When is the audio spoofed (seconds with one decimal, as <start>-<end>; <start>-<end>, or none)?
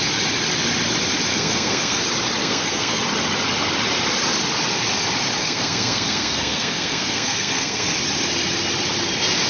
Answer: 1.3-2.0; 2.4-3.0; 5.4-7.9